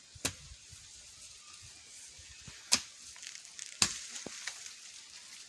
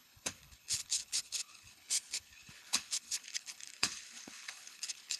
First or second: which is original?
first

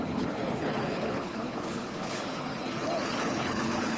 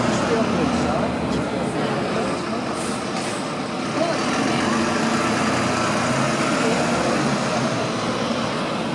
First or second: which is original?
second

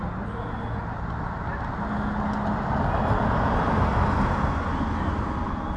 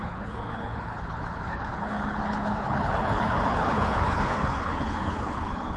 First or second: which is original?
first